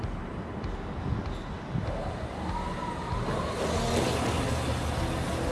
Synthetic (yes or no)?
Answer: no